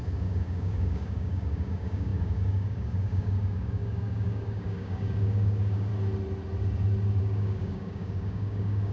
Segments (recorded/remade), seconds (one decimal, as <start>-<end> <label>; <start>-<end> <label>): 0.0-5.9 remade; 5.9-7.2 recorded; 7.2-8.9 remade